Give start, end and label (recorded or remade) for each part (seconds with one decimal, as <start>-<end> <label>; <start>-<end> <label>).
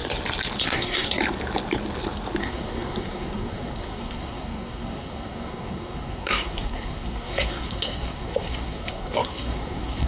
0.0-0.6 recorded; 0.6-1.2 remade; 1.2-2.4 recorded; 2.4-10.1 remade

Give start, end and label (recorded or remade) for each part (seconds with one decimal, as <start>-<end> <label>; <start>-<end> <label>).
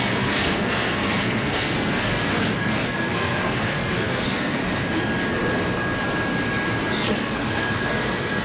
0.0-4.6 remade; 4.6-6.9 recorded; 6.9-8.4 remade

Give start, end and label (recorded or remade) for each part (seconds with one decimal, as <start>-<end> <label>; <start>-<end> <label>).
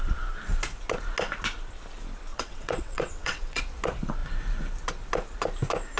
0.0-2.3 recorded; 2.3-3.6 remade; 3.6-6.0 recorded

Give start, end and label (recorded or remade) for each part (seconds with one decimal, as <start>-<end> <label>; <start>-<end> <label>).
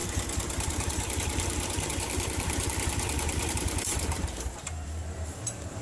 0.0-5.8 remade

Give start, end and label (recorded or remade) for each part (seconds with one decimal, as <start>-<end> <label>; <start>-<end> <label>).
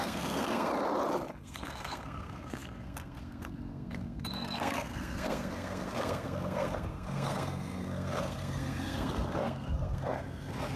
0.0-0.7 remade; 0.7-1.4 recorded; 1.4-10.8 remade